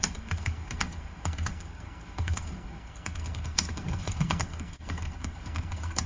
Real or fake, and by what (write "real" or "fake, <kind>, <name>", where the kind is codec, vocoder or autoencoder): fake, codec, SNAC